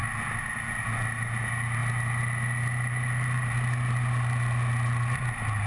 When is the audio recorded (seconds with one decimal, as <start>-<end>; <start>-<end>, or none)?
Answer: 0.0-5.7